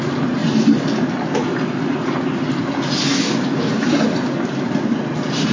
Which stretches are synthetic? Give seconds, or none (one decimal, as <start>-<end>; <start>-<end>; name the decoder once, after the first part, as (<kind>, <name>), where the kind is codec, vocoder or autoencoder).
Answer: none